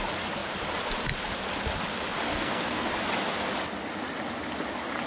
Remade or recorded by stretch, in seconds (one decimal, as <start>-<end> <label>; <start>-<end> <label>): 0.0-2.3 recorded; 2.3-2.9 remade; 2.9-5.1 recorded